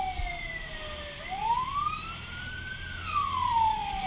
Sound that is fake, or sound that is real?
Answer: real